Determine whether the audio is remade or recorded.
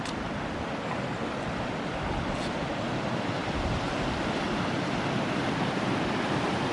recorded